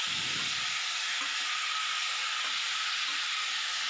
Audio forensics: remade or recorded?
recorded